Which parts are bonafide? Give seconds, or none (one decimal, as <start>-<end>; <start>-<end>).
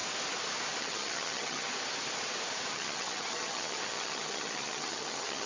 0.0-0.8; 1.7-2.7